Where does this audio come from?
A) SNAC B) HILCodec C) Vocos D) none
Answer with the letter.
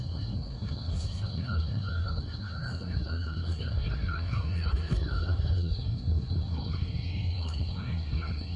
A